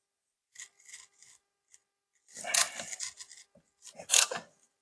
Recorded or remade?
recorded